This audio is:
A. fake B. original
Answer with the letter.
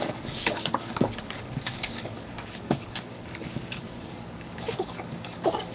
A